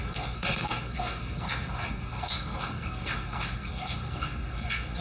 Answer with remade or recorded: remade